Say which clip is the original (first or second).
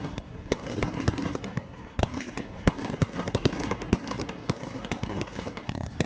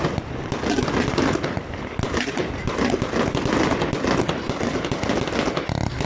second